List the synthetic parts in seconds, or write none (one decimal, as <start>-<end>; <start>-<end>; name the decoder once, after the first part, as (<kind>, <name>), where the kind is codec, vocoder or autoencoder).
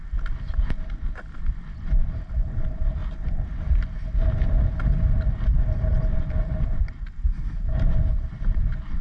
none